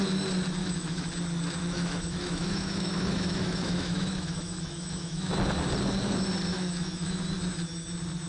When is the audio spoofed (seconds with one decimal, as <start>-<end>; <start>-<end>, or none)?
0.6-1.1; 1.6-5.3; 6.5-7.2